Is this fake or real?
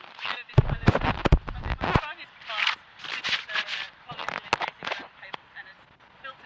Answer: real